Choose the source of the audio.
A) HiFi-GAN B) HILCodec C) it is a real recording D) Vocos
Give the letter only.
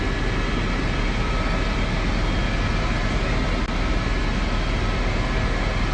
C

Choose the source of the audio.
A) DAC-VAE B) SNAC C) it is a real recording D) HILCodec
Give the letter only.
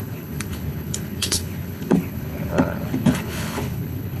D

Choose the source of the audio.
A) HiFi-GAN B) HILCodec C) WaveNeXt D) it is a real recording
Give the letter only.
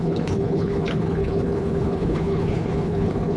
B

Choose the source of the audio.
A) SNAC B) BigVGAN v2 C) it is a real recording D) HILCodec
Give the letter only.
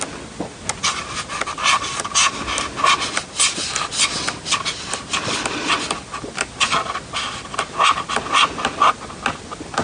C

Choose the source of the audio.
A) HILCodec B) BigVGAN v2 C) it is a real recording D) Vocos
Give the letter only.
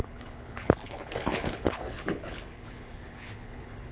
A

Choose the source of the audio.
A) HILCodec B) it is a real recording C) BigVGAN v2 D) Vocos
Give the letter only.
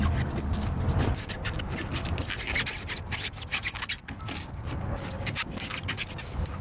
B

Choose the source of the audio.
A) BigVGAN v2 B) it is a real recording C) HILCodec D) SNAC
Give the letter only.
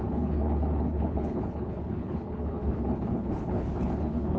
C